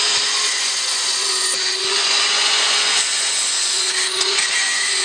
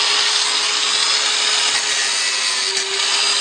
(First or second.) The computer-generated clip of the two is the first